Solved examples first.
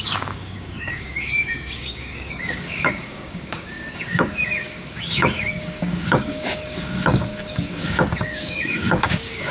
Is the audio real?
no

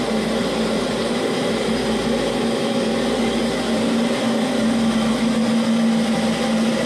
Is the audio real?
yes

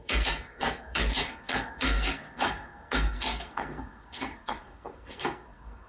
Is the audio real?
no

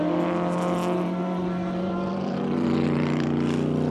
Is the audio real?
no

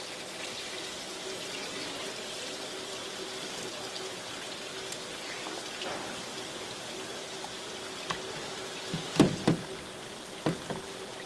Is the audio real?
yes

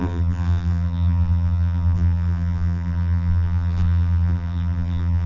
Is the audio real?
no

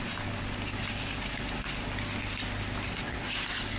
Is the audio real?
yes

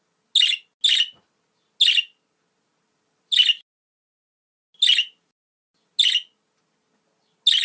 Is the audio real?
yes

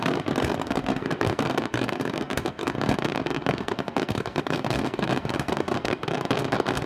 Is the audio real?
no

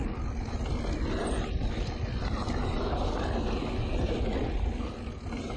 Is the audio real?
yes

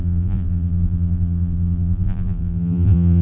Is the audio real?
no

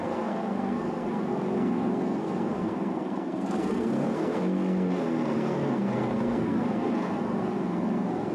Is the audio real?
no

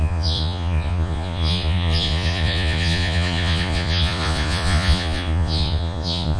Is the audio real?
no